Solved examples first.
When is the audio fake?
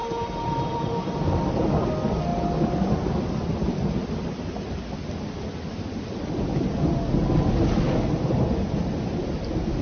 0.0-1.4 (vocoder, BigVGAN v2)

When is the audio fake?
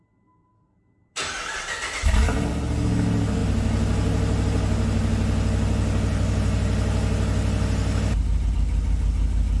none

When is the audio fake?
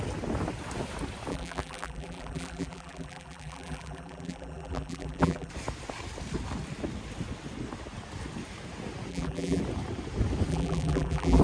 1.3-5.5 (vocoder, BigVGAN v2); 9.1-9.6; 10.5-11.4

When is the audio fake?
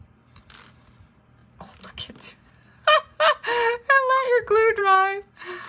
none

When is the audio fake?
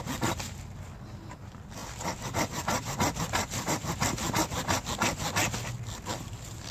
none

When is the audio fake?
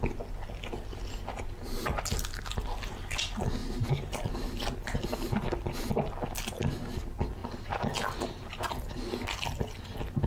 3.6-4.3 (vocoder, BigVGAN v2); 7.4-8.7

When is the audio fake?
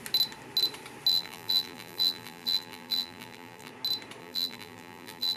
1.1-3.7 (vocoder, BigVGAN v2); 4.2-5.4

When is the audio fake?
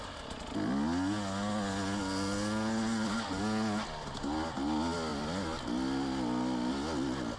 none